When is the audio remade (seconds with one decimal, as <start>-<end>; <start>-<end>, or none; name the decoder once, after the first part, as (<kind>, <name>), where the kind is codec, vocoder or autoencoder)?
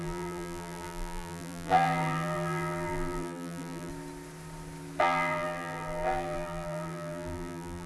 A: 0.0-3.9 (vocoder, BigVGAN v2); 5.0-7.9